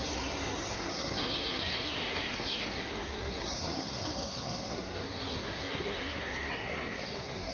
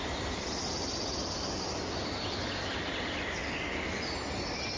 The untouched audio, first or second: second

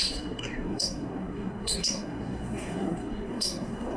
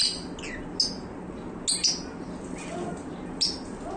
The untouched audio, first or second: second